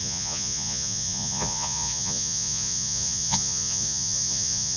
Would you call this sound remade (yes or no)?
yes